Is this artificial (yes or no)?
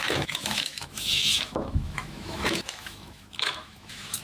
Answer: yes